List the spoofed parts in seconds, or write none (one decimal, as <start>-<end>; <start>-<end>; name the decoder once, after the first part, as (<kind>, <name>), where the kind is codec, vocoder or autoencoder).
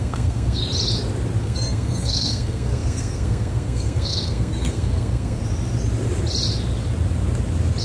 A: 0.0-0.6 (codec, SNAC); 1.4-5.4